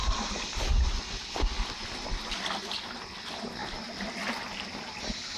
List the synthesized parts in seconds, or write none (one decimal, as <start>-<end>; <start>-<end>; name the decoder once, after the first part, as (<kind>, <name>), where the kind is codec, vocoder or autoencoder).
0.0-0.6 (vocoder, BigVGAN v2); 3.6-4.3